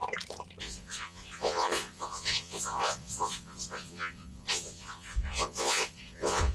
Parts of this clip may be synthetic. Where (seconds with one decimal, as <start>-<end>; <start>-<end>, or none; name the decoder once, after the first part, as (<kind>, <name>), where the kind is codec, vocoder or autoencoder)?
0.6-6.5 (vocoder, Vocos)